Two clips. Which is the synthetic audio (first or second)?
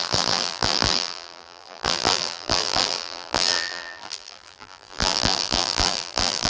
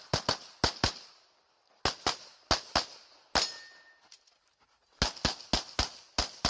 first